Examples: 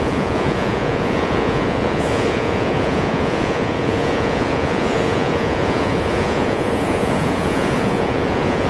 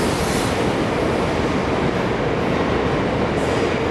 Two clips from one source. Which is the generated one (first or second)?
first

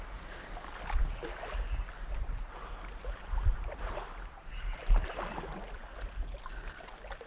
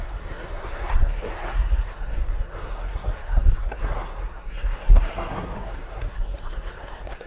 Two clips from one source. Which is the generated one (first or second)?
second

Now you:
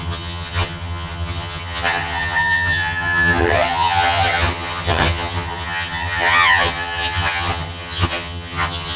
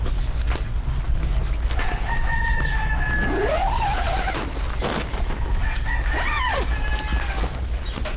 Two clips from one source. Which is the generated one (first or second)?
first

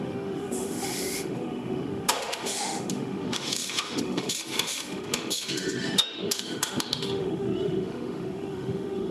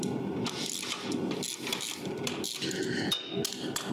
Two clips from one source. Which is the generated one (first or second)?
first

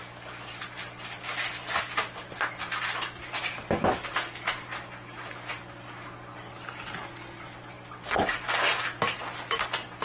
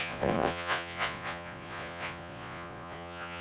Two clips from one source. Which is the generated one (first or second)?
second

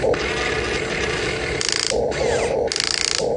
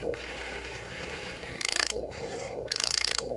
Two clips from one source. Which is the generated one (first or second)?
second